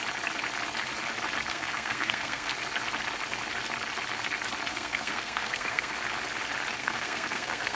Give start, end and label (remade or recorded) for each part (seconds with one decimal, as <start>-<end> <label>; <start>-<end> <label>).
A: 0.0-1.5 recorded; 1.5-2.5 remade; 2.5-4.7 recorded; 4.7-5.9 remade; 5.9-6.8 recorded; 6.8-7.8 remade